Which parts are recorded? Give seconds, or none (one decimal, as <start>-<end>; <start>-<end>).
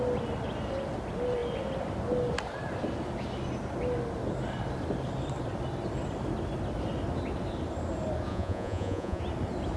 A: 0.0-8.3; 9.2-9.8